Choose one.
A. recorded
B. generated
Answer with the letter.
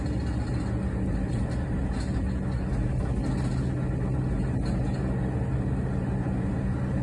A